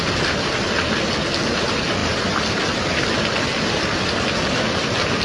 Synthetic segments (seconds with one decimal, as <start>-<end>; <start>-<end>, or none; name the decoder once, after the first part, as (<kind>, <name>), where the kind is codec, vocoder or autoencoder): none